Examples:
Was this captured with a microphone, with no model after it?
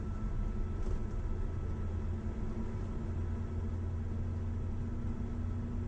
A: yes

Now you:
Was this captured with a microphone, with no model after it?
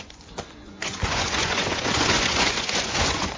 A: no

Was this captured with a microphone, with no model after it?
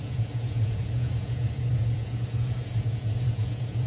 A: no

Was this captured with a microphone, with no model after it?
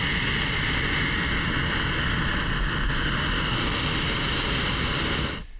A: yes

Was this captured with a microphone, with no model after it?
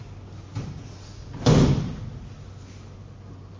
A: yes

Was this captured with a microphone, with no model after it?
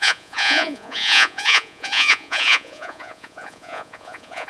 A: no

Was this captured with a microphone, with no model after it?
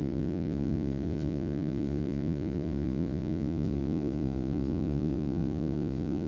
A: no